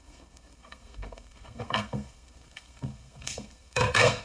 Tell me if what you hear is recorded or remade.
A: remade